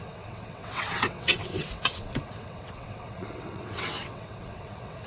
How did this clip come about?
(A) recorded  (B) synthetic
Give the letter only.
B